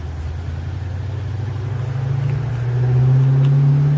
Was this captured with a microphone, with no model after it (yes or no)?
yes